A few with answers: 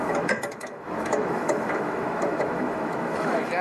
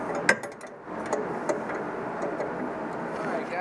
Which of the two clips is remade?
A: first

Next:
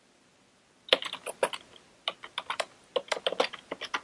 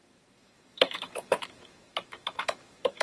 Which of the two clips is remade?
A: second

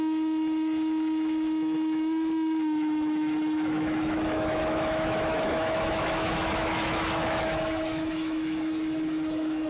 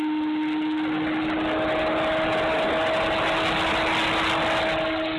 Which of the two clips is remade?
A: first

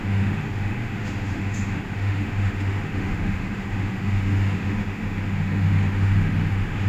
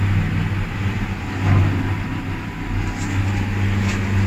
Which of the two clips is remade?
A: first